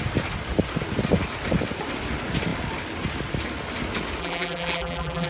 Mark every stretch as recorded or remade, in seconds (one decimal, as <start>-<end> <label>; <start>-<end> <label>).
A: 0.0-4.2 recorded; 4.2-5.3 remade